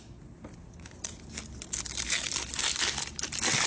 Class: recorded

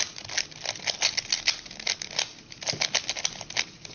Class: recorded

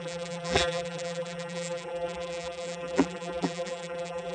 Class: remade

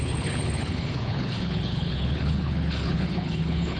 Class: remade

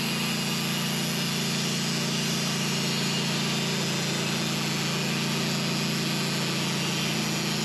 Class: recorded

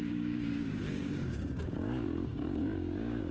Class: remade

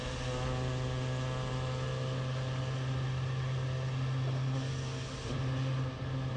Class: recorded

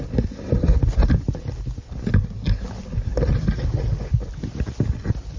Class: recorded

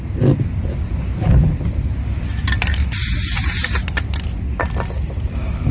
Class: recorded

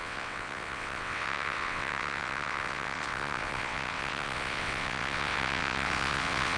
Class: remade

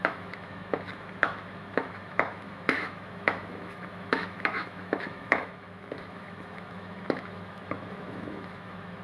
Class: remade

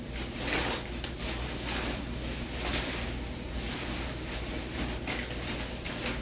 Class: recorded